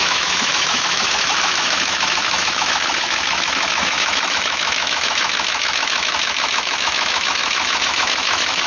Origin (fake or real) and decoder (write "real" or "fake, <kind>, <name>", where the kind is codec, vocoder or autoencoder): fake, autoencoder, DAC-VAE